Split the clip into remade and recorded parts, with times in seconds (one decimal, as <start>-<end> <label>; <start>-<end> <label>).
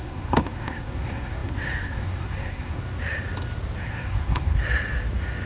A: 0.0-2.8 remade; 2.8-3.8 recorded; 3.8-4.6 remade; 4.6-5.5 recorded